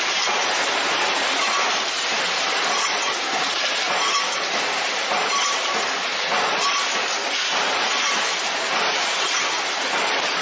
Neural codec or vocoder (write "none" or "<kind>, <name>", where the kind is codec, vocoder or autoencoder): none